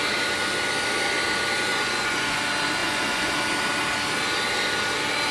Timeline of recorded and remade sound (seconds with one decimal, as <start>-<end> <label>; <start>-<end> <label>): 0.0-1.7 recorded; 1.7-2.4 remade; 2.4-2.8 recorded; 2.8-3.3 remade; 3.3-5.3 recorded